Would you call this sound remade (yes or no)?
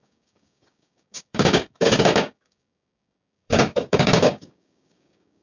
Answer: yes